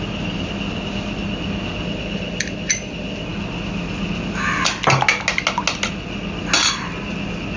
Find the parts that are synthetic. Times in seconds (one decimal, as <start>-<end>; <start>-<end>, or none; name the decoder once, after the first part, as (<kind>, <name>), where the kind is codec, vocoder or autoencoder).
none